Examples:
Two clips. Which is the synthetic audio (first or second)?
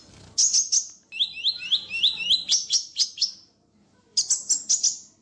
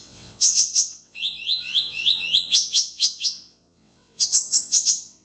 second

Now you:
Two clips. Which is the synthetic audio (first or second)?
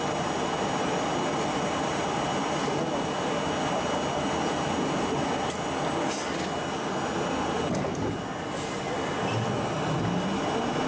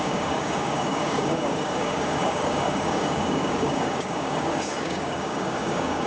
second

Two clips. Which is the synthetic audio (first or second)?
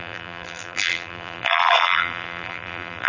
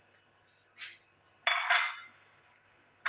first